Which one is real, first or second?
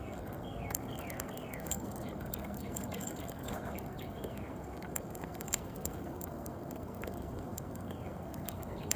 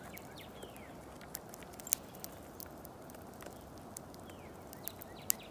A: second